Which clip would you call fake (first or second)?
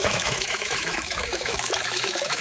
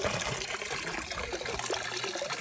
first